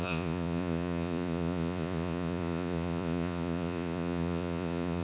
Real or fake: fake